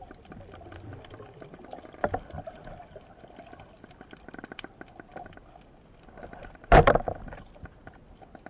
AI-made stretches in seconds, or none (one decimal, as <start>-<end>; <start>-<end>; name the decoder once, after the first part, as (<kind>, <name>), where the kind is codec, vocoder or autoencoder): none